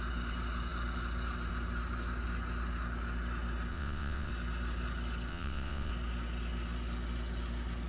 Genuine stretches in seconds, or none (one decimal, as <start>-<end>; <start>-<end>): 0.0-3.7; 4.3-5.3; 5.9-7.9